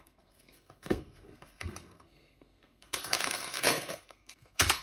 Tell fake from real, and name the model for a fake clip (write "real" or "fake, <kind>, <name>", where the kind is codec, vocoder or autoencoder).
fake, codec, SNAC